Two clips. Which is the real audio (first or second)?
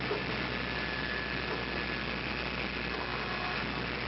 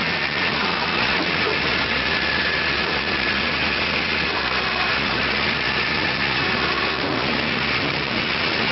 first